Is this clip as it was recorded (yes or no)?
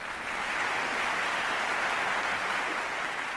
yes